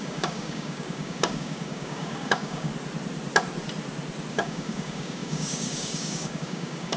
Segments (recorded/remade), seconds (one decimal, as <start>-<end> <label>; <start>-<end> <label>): 0.0-2.7 remade; 2.7-4.3 recorded; 4.3-7.0 remade